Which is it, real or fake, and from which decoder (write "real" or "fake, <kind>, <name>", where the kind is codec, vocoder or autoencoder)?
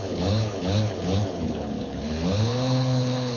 fake, codec, HILCodec